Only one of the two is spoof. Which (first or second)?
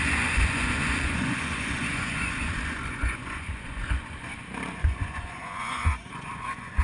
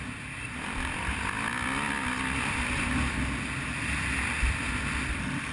first